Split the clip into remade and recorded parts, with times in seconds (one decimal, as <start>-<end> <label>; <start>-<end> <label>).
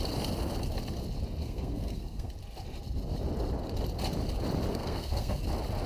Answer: 0.0-1.4 recorded; 1.4-2.3 remade; 2.3-4.7 recorded; 4.7-5.4 remade; 5.4-5.9 recorded